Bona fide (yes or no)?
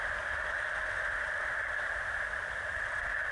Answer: yes